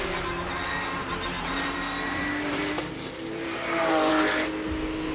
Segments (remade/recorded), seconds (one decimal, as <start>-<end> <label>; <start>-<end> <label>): 0.0-1.0 recorded; 1.0-4.1 remade; 4.1-5.1 recorded